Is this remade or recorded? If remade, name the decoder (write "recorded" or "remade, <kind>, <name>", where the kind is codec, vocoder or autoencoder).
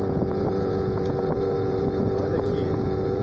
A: remade, vocoder, Vocos